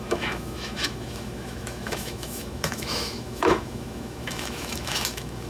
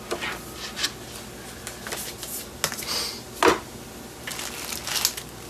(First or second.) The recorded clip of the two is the second